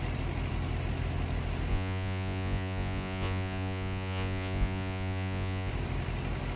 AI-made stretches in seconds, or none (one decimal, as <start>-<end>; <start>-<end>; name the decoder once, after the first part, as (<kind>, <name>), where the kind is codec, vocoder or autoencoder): 1.7-5.7 (vocoder, Vocos)